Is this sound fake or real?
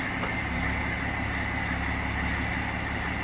real